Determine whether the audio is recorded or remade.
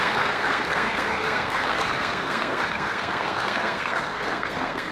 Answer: remade